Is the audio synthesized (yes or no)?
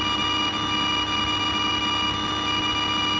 no